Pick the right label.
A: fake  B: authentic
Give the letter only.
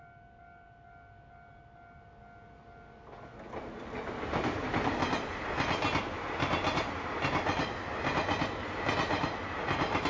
B